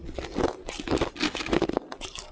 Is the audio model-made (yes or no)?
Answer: no